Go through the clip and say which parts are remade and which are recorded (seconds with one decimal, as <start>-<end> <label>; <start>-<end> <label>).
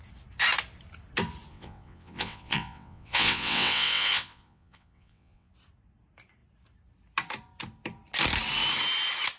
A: 0.0-1.5 recorded; 1.5-5.5 remade; 5.5-9.4 recorded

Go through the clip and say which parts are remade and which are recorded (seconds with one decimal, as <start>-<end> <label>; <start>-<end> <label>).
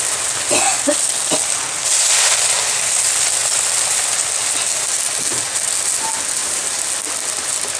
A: 0.0-7.8 recorded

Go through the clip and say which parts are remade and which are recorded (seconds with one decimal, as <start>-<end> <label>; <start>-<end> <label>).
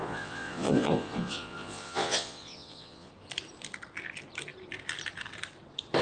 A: 0.0-3.1 remade; 3.1-6.0 recorded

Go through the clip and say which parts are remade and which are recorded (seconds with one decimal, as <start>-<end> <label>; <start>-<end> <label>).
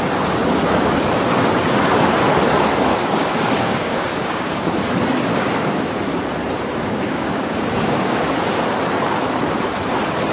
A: 0.0-2.9 recorded; 2.9-4.8 remade; 4.8-5.3 recorded; 5.3-5.9 remade; 5.9-6.7 recorded; 6.7-8.3 remade; 8.3-10.3 recorded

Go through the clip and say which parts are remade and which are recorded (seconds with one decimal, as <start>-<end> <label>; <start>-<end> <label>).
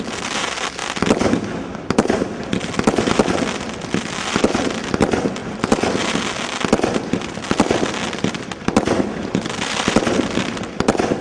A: 0.0-11.2 recorded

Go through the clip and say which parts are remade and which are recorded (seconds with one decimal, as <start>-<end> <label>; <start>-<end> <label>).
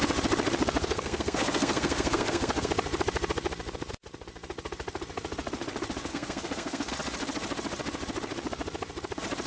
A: 0.0-0.8 recorded; 0.8-2.7 remade; 2.7-6.1 recorded; 6.1-6.9 remade; 6.9-9.5 recorded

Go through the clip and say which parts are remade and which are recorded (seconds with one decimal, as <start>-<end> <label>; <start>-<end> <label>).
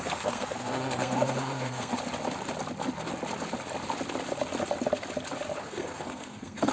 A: 0.0-1.9 remade; 1.9-5.6 recorded; 5.6-6.7 remade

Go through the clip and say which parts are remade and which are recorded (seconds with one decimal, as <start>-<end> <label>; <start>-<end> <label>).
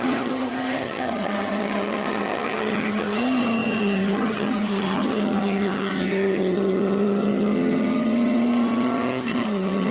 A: 0.0-9.9 remade